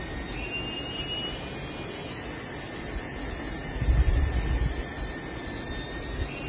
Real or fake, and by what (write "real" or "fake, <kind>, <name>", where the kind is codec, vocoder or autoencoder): real